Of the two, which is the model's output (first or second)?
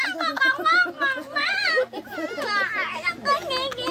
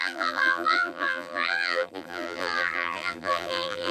second